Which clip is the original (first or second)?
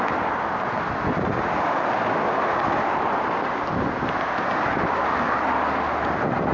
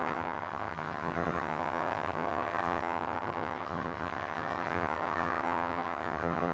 first